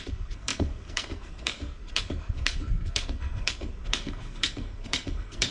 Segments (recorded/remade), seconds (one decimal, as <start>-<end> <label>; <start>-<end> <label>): 0.0-5.5 remade